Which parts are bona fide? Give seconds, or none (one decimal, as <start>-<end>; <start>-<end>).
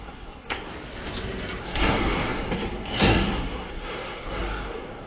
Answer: 0.7-1.6